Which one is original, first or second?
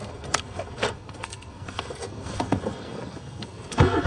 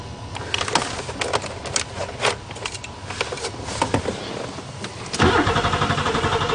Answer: second